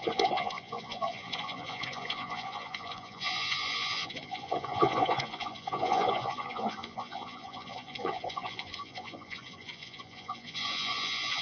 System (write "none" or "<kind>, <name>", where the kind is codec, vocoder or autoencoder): vocoder, Vocos